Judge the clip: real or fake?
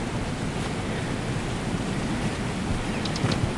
real